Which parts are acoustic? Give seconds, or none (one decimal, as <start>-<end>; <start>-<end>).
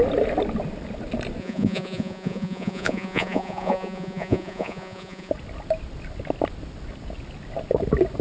0.0-1.4; 5.3-8.2